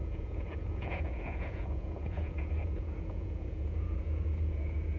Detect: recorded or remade remade